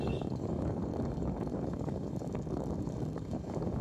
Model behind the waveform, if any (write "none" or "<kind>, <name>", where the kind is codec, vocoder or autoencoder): codec, DAC